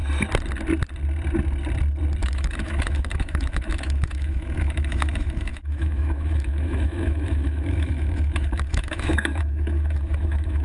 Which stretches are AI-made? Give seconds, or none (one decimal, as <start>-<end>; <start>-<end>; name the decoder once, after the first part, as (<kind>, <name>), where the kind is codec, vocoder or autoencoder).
2.2-10.6 (autoencoder, DAC-VAE)